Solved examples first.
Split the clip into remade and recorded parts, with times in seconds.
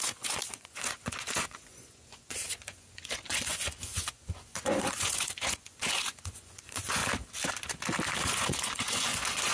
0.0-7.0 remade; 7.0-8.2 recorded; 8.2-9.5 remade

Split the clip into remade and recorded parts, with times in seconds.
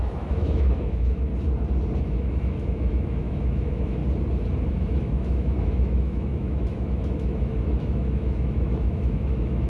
0.0-1.3 remade; 1.3-2.0 recorded; 2.0-4.0 remade; 4.0-4.7 recorded; 4.7-9.7 remade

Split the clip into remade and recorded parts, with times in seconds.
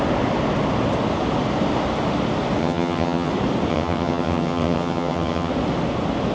0.0-2.6 recorded; 2.6-3.3 remade; 3.3-3.7 recorded; 3.7-5.5 remade; 5.5-6.3 recorded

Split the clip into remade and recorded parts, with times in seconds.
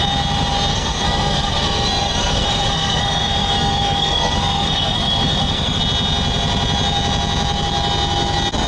0.0-0.7 recorded; 0.7-5.8 remade; 5.8-8.7 recorded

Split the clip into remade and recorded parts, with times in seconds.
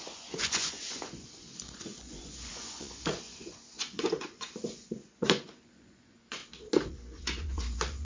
0.0-6.4 remade; 6.4-6.9 recorded; 6.9-8.0 remade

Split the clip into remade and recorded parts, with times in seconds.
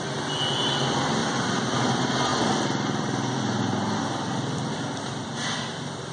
0.0-1.2 recorded; 1.2-1.8 remade; 1.8-2.3 recorded; 2.3-6.1 remade